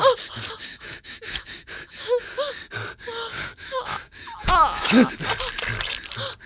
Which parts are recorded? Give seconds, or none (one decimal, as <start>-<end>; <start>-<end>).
0.0-0.7; 2.5-3.3; 5.1-6.5

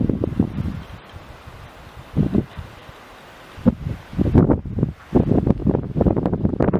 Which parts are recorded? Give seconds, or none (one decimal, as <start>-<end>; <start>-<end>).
0.0-6.8

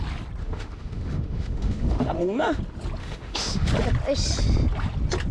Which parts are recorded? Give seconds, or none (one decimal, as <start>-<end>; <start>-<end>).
0.0-0.4; 2.6-3.0; 3.7-5.3